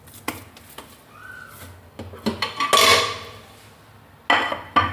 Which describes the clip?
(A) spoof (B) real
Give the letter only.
B